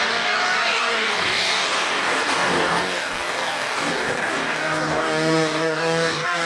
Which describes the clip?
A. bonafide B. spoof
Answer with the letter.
B